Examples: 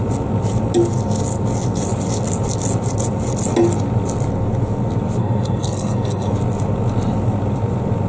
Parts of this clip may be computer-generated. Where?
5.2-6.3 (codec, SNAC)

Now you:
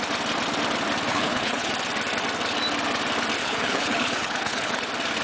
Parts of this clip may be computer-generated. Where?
1.1-1.7 (codec, HILCodec); 3.4-4.8

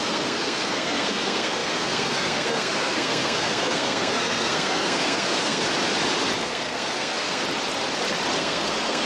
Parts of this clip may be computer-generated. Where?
0.0-5.7 (codec, SNAC); 6.4-7.4; 8.4-9.1